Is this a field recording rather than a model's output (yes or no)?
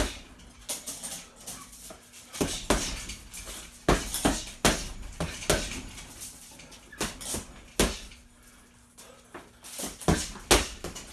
yes